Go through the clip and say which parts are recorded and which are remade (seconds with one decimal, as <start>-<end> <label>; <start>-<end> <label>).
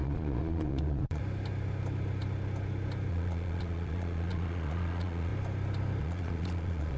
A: 0.0-1.2 remade; 1.2-3.1 recorded; 3.1-5.3 remade; 5.3-6.0 recorded; 6.0-7.0 remade